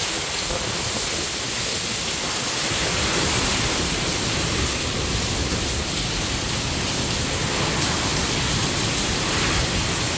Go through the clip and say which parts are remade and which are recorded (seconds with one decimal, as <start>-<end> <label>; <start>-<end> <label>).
0.0-10.2 recorded